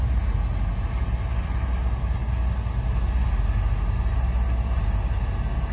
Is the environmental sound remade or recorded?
recorded